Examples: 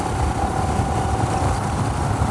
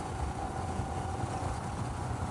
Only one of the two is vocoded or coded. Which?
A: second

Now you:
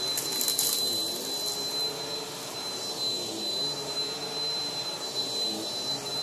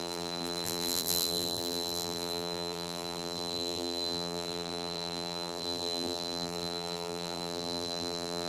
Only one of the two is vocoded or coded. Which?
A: second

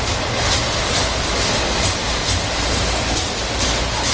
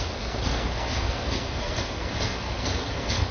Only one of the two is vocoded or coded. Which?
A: second